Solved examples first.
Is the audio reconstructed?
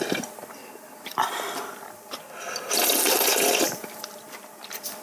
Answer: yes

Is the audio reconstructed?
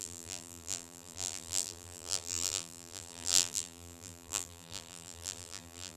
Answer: yes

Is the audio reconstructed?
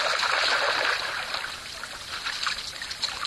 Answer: yes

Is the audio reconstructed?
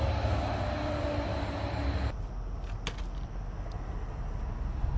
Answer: no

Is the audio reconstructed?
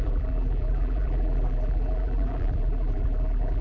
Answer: yes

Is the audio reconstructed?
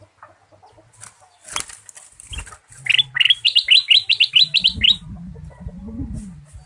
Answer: no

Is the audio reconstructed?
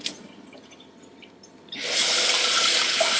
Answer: yes